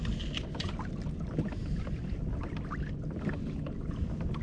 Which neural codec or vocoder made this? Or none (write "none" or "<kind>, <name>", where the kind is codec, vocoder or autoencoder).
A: none